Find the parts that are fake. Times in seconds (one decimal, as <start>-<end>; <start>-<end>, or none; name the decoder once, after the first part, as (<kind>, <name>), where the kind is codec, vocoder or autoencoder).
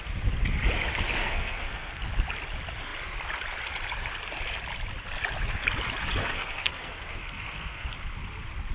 1.2-2.0 (codec, SNAC); 6.2-7.9